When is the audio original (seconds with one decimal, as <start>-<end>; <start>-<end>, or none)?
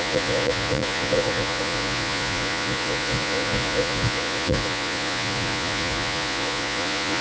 none